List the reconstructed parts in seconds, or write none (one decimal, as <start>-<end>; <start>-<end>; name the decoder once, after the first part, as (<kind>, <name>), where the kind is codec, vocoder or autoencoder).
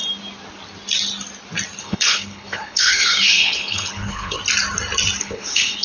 1.8-4.4 (codec, HILCodec); 5.2-5.8